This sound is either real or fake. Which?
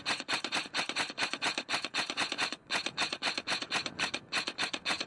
fake